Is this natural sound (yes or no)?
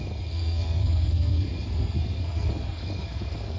no